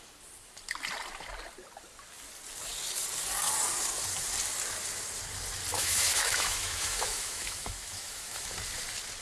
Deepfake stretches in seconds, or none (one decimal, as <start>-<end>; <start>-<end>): 5.7-8.5